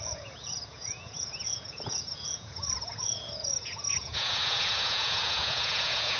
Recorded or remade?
remade